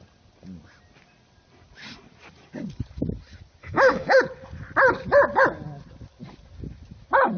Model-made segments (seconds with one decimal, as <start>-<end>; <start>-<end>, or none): 3.6-4.2